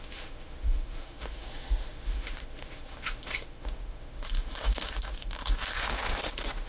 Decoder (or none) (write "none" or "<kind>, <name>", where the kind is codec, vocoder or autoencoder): autoencoder, DAC-VAE